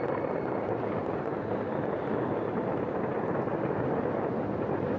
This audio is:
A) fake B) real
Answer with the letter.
B